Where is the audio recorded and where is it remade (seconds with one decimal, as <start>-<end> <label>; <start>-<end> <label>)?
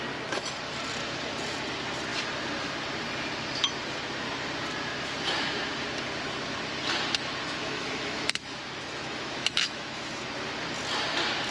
0.0-7.6 recorded; 7.6-10.2 remade; 10.2-11.5 recorded